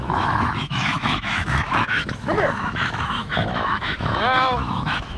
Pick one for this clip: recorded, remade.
remade